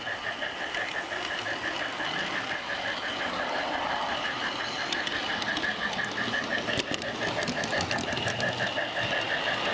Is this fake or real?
real